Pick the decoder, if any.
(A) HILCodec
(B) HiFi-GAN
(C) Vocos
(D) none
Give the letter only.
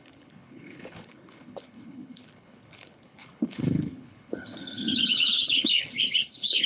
A